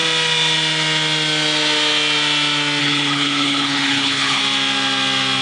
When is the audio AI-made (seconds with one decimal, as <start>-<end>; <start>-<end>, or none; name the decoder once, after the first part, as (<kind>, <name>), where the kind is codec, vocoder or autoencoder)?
2.8-4.4 (codec, HILCodec)